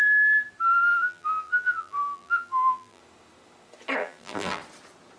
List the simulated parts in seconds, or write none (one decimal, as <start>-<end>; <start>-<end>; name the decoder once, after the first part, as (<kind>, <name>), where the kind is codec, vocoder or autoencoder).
0.9-3.0 (vocoder, BigVGAN v2); 4.0-4.6